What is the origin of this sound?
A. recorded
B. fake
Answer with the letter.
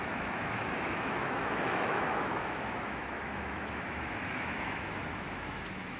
B